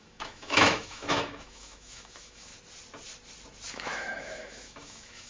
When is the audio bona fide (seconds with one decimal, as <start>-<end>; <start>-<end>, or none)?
2.5-3.7